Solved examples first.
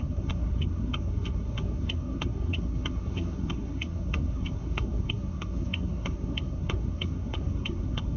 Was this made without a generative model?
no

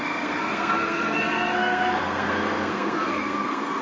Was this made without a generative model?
no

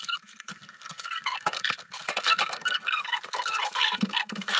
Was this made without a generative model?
no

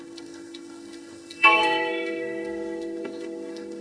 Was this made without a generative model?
no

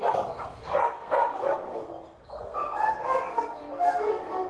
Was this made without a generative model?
no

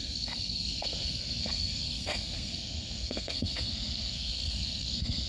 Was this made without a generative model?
no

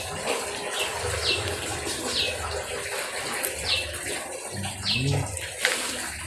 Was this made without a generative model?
yes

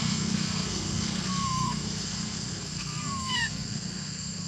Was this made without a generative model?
no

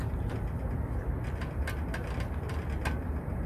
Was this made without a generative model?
yes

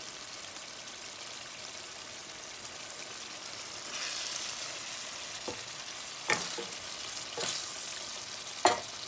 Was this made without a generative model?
yes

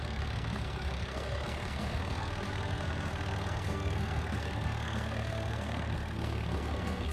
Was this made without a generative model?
no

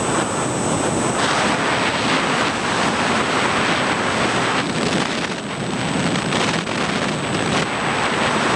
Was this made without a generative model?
yes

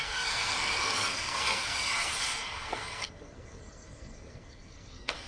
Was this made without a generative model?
no